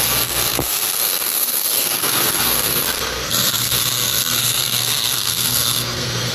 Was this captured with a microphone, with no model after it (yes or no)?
no